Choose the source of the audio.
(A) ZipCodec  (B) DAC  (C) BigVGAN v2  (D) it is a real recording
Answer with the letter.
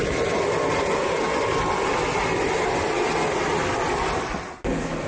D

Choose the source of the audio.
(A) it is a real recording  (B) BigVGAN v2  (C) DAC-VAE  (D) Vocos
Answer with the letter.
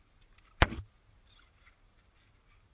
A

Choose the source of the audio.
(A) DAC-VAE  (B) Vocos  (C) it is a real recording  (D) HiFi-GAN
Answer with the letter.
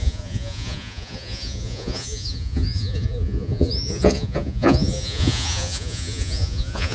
B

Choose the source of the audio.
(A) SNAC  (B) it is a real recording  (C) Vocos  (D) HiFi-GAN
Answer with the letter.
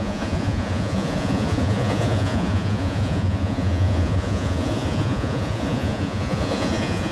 C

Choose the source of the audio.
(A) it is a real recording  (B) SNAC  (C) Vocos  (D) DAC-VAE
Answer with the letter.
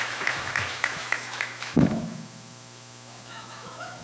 D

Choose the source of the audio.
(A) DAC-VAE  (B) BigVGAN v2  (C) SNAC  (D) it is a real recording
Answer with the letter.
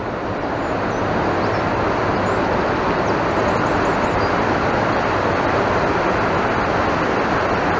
D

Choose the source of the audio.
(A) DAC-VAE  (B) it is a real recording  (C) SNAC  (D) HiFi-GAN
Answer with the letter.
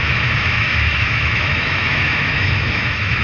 A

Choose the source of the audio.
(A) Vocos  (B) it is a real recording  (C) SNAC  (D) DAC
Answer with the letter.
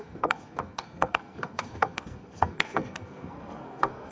C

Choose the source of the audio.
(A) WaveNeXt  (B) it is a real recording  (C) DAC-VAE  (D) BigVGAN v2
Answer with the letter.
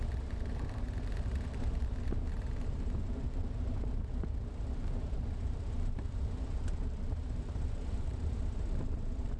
D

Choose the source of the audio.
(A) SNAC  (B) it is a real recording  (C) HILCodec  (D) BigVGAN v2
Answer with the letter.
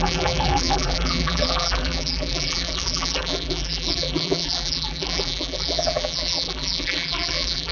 D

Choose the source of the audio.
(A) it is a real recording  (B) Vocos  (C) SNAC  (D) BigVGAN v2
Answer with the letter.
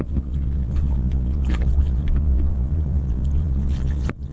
B